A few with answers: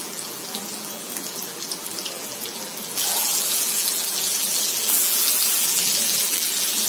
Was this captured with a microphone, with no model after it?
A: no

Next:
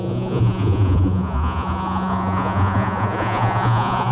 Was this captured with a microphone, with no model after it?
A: no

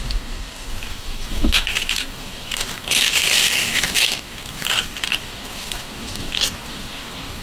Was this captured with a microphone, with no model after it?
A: no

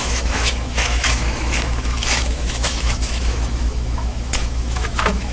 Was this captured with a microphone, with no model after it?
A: no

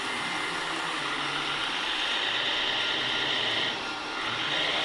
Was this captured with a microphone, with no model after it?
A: yes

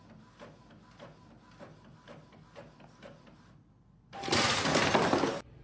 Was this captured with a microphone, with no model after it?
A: yes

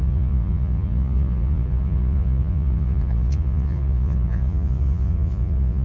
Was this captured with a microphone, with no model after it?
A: no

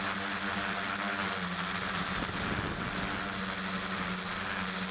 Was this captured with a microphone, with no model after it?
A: yes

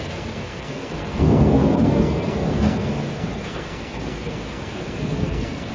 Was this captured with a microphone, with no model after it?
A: no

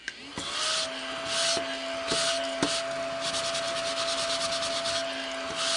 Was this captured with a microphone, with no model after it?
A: yes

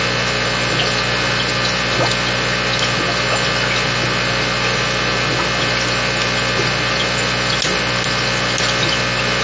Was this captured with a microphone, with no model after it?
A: yes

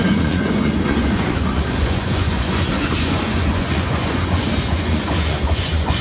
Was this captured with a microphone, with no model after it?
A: no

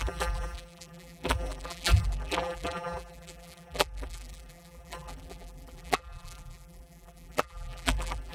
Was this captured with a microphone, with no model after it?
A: no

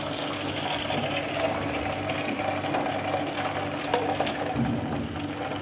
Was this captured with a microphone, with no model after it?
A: yes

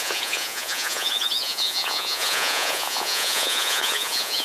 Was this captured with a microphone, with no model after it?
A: no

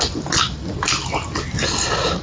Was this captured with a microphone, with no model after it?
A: yes